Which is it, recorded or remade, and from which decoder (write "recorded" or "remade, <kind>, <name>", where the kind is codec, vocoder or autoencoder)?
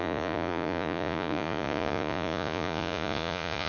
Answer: remade, vocoder, Vocos